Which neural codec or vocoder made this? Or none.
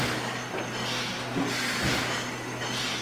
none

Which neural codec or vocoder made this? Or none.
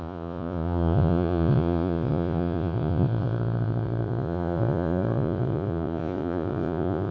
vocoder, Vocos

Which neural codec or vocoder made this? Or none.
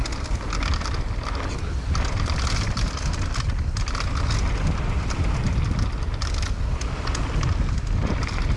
none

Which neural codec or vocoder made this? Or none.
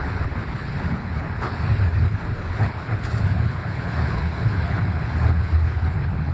codec, HILCodec